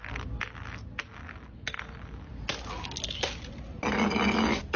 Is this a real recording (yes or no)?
yes